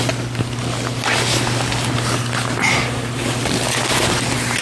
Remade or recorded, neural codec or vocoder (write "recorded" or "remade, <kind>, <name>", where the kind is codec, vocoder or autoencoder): recorded